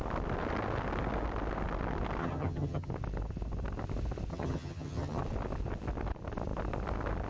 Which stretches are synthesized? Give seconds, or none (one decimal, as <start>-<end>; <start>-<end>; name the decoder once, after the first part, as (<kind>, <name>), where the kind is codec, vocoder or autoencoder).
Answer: 2.2-2.9 (vocoder, HiFi-GAN); 4.3-5.2